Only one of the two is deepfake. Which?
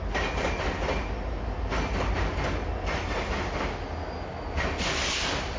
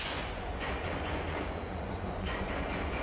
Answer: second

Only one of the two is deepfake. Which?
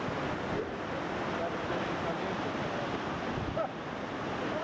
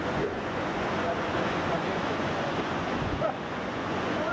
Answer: second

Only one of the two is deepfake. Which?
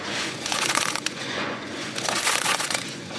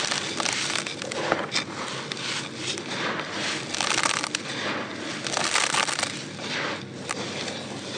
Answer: first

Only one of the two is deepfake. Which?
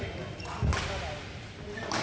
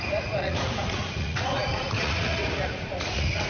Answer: second